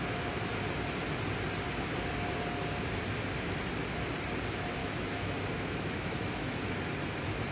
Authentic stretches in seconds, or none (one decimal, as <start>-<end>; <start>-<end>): 0.0-4.8; 6.8-7.5